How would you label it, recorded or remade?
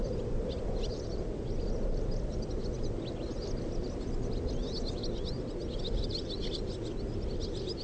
recorded